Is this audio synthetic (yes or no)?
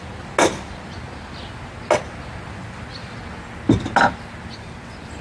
no